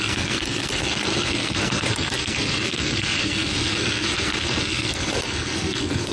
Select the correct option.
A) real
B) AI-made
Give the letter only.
B